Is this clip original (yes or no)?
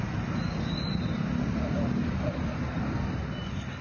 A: yes